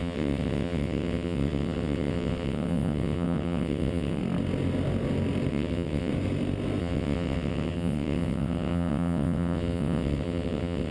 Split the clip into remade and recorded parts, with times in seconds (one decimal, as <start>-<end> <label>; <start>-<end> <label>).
0.0-4.2 remade; 4.2-5.5 recorded; 5.5-6.1 remade; 6.1-6.8 recorded; 6.8-10.9 remade